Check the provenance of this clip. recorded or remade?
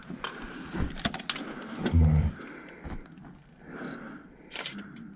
recorded